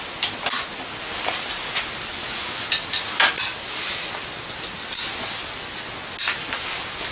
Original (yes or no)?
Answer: yes